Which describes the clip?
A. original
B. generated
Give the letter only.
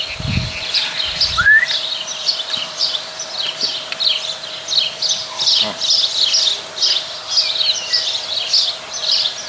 A